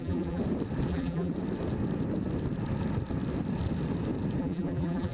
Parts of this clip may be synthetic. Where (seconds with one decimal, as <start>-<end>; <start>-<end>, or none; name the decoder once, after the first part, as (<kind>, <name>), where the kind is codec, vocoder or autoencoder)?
0.0-0.4 (vocoder, BigVGAN v2); 0.9-1.3; 4.4-5.1